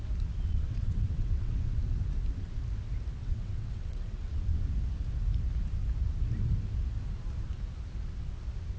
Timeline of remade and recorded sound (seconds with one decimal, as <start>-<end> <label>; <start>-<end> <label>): 0.0-0.4 recorded; 0.4-1.8 remade; 1.8-3.2 recorded; 3.2-4.6 remade; 4.6-8.8 recorded